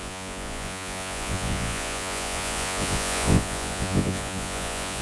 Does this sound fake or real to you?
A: fake